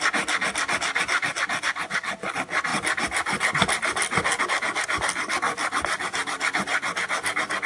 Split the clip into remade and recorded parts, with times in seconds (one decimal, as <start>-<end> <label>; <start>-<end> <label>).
0.0-7.7 recorded